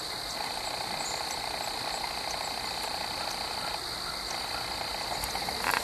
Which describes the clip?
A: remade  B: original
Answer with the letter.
B